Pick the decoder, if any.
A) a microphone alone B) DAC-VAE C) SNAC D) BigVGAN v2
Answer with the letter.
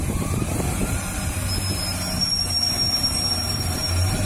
D